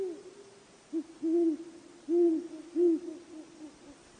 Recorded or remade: recorded